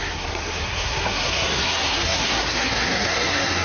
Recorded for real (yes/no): no